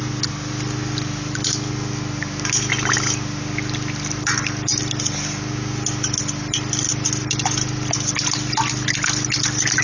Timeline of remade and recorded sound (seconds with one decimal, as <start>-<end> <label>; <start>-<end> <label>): 0.0-7.2 recorded; 7.2-7.9 remade; 7.9-9.8 recorded